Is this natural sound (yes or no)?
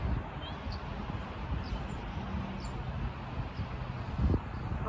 yes